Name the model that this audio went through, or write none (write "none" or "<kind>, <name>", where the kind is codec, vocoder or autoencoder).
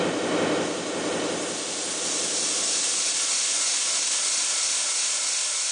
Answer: none